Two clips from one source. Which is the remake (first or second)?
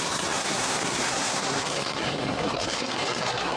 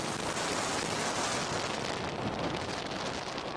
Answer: first